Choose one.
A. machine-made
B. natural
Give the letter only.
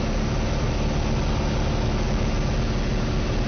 B